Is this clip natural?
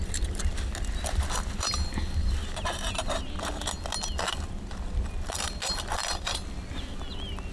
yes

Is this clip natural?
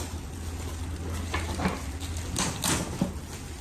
yes